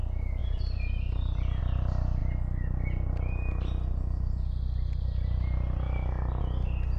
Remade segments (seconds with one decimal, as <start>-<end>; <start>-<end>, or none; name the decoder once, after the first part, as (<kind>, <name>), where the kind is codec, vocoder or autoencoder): 0.4-1.6 (vocoder, BigVGAN v2)